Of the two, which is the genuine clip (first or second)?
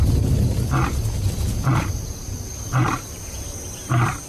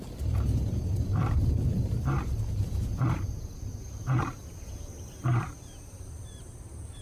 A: first